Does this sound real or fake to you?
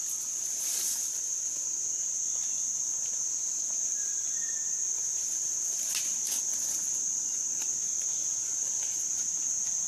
real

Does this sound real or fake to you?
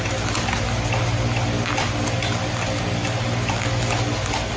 real